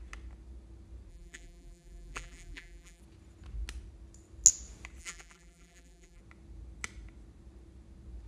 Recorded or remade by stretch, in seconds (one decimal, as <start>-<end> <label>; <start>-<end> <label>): 0.0-1.1 recorded; 1.1-3.0 remade; 3.0-5.0 recorded; 5.0-6.2 remade; 6.2-8.3 recorded